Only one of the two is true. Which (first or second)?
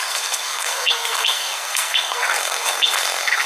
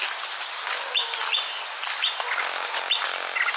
second